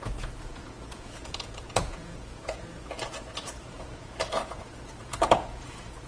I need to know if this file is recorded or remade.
remade